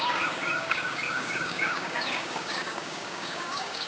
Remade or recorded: remade